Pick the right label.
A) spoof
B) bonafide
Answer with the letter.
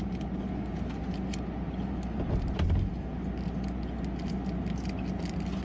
B